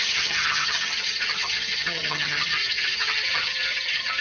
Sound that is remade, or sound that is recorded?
remade